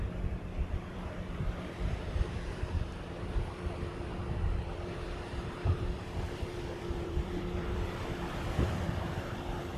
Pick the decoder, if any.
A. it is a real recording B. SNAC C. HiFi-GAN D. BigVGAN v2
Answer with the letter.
D